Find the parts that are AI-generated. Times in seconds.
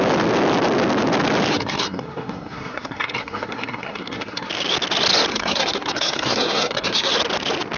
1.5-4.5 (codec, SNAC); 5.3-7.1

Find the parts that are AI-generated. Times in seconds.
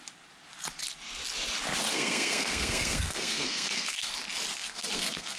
1.9-4.1 (codec, SNAC); 4.5-5.4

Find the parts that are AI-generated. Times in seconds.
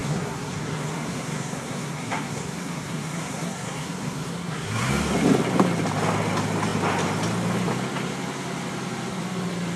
0.0-4.9 (codec, SNAC)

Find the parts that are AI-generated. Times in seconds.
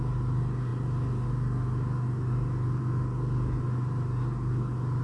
none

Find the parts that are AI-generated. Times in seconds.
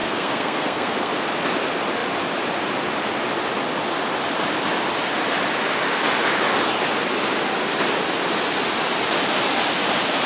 0.0-1.1 (codec, SNAC)